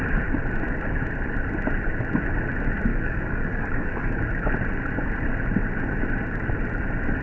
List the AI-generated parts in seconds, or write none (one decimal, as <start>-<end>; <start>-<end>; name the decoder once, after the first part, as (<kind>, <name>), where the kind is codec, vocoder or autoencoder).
2.9-4.2 (codec, DAC)